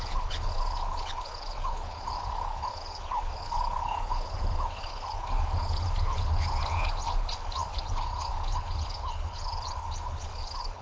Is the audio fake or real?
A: fake